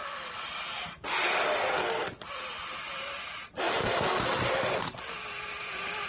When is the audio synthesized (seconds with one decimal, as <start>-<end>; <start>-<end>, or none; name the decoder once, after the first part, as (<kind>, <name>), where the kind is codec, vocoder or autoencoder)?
0.0-1.4 (vocoder, BigVGAN v2); 2.0-2.6; 3.8-5.0